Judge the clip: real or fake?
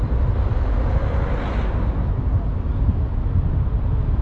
real